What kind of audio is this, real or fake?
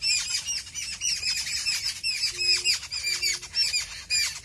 real